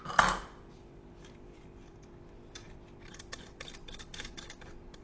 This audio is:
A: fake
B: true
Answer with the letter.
A